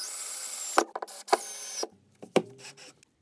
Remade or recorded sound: recorded